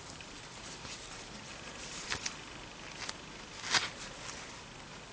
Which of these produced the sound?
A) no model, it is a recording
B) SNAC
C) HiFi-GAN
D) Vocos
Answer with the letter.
A